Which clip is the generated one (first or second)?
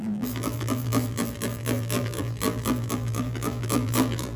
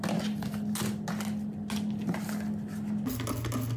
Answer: first